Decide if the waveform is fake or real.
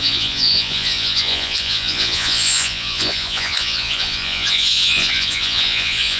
fake